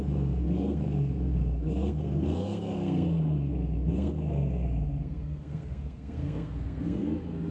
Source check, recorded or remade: remade